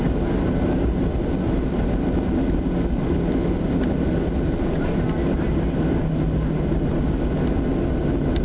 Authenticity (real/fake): real